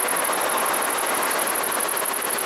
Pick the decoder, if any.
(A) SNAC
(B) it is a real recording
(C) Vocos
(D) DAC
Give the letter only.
B